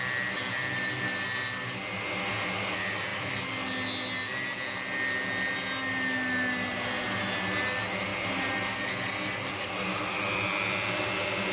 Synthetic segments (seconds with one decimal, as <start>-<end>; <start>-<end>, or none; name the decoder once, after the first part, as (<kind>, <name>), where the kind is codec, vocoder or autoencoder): none